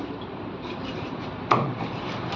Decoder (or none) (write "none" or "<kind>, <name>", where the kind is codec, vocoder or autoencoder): none